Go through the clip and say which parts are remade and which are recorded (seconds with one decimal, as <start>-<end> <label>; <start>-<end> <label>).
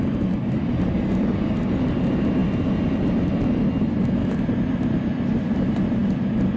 0.0-6.6 recorded